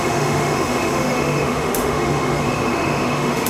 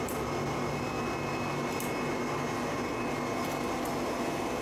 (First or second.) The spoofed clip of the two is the first